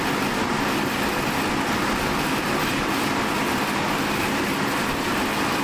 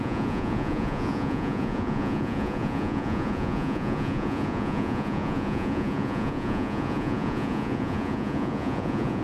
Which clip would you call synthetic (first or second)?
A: second